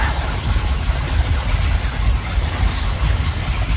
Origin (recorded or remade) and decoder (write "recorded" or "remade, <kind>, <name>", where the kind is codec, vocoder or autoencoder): recorded